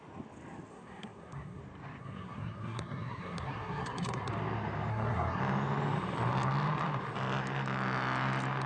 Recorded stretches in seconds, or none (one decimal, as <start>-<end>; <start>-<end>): 0.0-0.7; 1.6-2.0; 4.3-4.9; 5.4-8.7

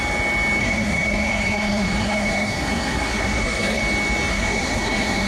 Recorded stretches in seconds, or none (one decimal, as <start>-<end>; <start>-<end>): 0.0-0.6; 3.8-4.3

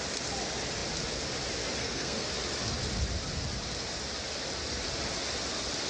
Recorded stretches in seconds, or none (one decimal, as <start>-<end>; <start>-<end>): 0.0-1.8; 2.3-5.9

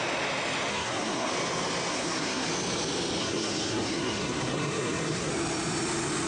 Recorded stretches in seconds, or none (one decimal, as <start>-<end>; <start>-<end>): 0.0-0.7; 1.3-1.9; 2.5-3.2; 5.3-6.3

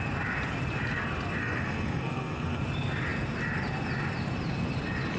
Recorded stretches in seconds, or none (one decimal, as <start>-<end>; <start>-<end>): 0.0-1.4; 2.6-5.2

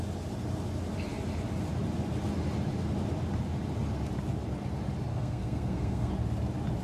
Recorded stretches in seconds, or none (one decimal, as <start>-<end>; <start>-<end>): 0.0-5.1; 6.1-6.8

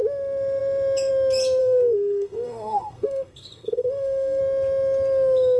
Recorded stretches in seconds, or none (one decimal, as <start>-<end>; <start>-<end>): 0.0-1.6; 4.4-5.6